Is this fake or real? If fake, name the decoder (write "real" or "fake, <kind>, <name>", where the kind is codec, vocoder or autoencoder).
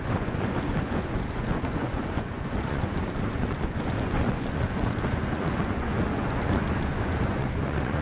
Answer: fake, vocoder, Vocos